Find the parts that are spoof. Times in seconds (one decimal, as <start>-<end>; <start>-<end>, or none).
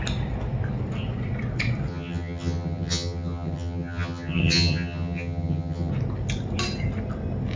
1.9-5.9